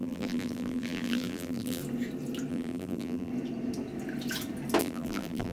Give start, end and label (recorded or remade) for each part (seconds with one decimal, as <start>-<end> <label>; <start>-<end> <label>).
0.0-1.8 remade; 1.8-2.5 recorded; 2.5-3.3 remade; 3.3-4.8 recorded; 4.8-5.5 remade